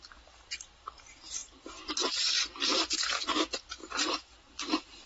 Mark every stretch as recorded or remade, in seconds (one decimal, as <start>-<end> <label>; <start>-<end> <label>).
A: 0.0-1.4 recorded; 1.4-2.3 remade; 2.3-2.7 recorded; 2.7-3.4 remade; 3.4-3.8 recorded; 3.8-5.1 remade